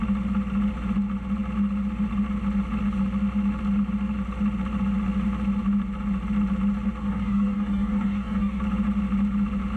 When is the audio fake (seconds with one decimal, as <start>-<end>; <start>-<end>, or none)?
7.0-8.6